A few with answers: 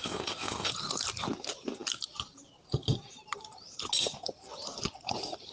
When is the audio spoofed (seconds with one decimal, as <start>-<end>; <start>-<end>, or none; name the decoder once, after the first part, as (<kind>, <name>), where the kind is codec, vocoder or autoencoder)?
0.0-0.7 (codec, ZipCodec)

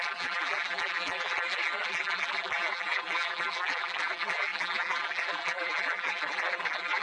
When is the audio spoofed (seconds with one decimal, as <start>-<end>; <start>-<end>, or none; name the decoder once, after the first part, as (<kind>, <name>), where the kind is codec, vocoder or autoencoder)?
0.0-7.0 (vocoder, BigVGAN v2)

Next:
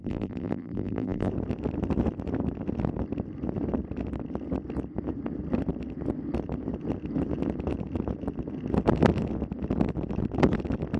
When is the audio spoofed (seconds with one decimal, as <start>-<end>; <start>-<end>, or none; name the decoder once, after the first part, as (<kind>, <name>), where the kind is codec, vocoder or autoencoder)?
0.0-1.3 (vocoder, BigVGAN v2)